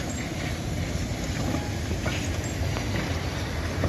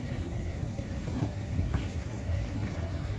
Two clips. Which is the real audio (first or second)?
first